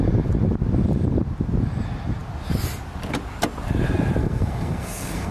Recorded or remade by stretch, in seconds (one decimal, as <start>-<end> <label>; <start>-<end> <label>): 0.0-4.2 recorded; 4.2-5.3 remade